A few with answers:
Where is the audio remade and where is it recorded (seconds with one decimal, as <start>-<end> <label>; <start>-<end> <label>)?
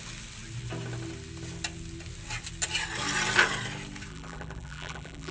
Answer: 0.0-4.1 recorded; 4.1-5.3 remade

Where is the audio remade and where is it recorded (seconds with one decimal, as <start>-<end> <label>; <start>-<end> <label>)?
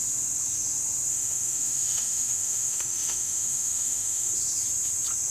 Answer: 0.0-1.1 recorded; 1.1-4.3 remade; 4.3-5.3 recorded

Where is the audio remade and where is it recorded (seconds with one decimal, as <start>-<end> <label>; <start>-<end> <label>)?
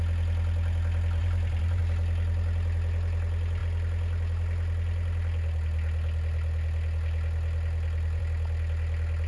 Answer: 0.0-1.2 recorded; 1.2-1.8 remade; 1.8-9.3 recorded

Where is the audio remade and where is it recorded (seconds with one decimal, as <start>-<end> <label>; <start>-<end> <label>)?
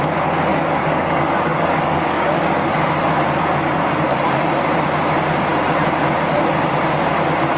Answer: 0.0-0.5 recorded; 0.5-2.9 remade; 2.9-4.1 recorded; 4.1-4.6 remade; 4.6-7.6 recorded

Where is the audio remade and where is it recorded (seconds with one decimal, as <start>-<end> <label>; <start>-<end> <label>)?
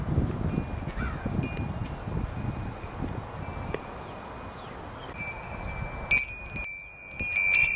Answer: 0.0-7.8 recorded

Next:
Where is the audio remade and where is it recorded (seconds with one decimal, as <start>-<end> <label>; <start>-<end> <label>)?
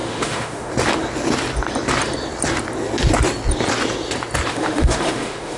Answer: 0.0-0.7 remade; 0.7-4.5 recorded; 4.5-5.6 remade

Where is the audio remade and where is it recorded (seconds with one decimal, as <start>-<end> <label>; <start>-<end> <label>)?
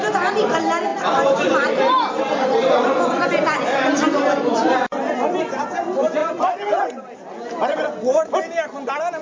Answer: 0.0-9.2 recorded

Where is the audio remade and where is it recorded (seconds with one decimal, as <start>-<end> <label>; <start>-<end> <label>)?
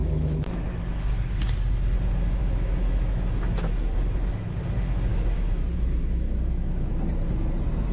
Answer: 0.0-0.7 remade; 0.7-2.4 recorded; 2.4-3.3 remade; 3.3-5.1 recorded; 5.1-6.9 remade; 6.9-7.9 recorded